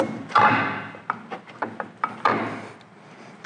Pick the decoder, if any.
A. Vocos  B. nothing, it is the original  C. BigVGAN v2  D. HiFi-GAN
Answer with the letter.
B